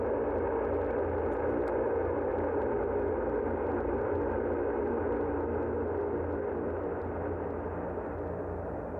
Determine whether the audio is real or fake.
real